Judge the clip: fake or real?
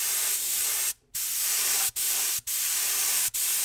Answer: fake